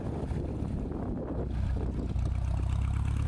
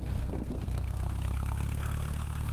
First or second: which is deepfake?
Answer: second